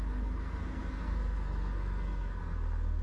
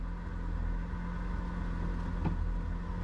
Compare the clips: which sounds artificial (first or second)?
first